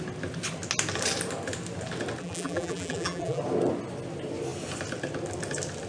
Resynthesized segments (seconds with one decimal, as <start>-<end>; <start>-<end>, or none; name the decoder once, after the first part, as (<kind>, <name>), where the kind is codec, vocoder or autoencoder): 2.2-3.4 (vocoder, BigVGAN v2)